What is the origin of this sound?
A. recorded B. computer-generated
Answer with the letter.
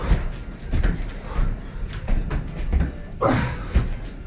A